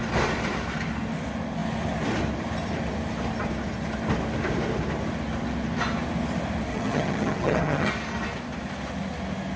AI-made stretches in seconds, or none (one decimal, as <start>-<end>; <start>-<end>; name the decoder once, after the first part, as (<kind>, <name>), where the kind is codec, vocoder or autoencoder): 6.7-7.9 (vocoder, HiFi-GAN)